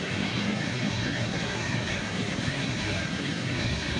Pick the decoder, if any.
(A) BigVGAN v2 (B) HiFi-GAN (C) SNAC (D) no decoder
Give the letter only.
C